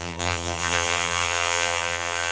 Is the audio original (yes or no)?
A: no